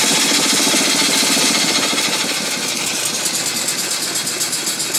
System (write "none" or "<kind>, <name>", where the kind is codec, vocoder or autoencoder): none